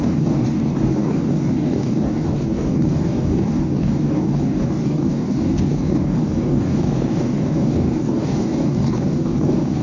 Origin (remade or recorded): remade